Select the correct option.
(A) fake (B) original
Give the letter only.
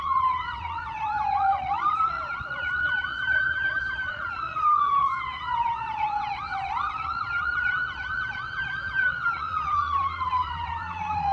A